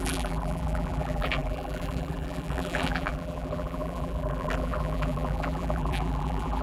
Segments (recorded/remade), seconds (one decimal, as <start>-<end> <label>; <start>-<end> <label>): 0.0-6.6 remade